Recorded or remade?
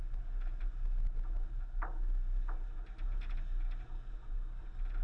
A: recorded